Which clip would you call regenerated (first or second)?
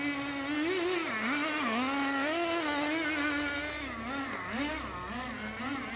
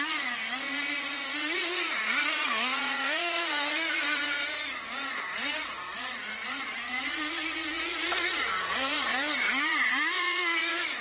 second